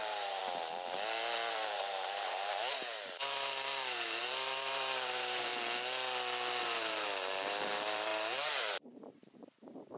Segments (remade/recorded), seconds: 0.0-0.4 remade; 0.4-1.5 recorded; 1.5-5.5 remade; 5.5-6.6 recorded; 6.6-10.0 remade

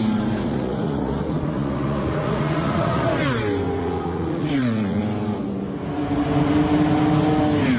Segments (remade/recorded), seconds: 0.0-0.4 recorded; 0.4-3.2 remade; 3.2-3.8 recorded; 3.8-5.0 remade; 5.0-7.8 recorded

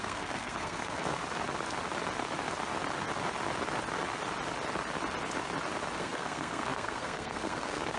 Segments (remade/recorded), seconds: 0.0-1.2 remade; 1.2-6.0 recorded; 6.0-8.0 remade

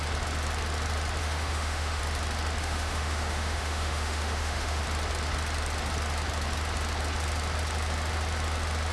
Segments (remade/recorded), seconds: 0.0-1.2 recorded; 1.2-2.0 remade; 2.0-2.6 recorded; 2.6-4.8 remade; 4.8-8.9 recorded